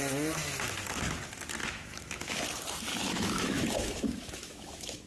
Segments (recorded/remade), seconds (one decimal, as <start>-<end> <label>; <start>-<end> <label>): 0.0-1.6 recorded; 1.6-2.4 remade; 2.4-2.9 recorded; 2.9-5.1 remade